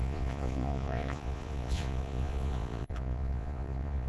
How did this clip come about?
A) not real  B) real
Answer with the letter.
A